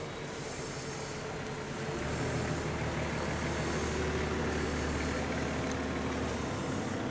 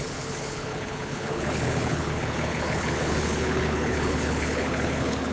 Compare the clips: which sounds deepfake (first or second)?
second